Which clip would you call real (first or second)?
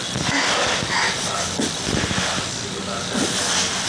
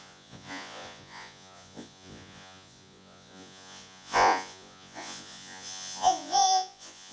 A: first